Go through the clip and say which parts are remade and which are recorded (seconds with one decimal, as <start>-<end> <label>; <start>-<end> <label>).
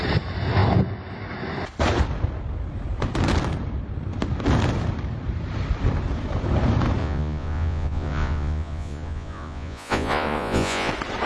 0.0-7.0 recorded; 7.0-10.9 remade; 10.9-11.3 recorded